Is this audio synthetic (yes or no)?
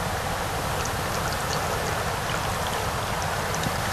no